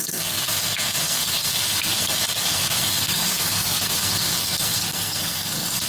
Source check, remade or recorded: remade